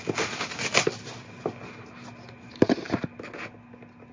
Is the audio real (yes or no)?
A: yes